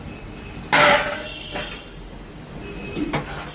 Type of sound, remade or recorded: recorded